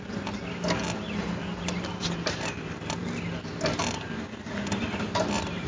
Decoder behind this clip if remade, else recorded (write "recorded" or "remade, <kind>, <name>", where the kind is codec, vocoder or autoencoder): recorded